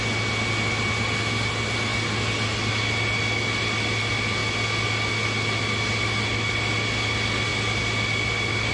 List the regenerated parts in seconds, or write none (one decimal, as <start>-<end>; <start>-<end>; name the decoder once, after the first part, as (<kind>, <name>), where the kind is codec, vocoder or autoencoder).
none